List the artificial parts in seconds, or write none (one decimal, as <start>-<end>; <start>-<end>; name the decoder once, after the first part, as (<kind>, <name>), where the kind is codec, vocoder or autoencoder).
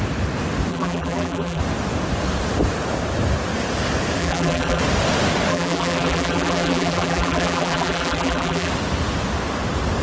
0.7-1.6 (vocoder, BigVGAN v2); 4.2-4.8; 5.5-8.7